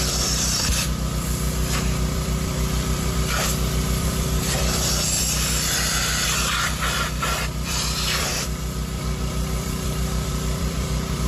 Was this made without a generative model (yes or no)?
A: no